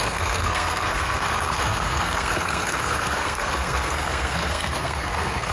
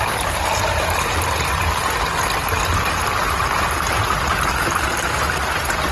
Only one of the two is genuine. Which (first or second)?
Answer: second